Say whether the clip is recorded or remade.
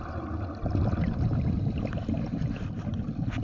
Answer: recorded